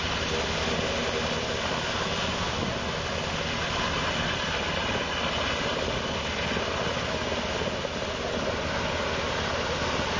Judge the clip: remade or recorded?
recorded